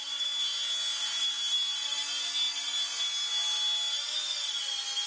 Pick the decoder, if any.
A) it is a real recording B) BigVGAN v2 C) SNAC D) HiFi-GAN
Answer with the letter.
A